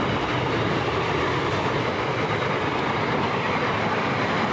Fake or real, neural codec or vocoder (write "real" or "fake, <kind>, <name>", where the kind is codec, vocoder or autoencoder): real